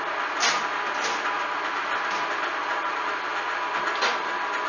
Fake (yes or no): no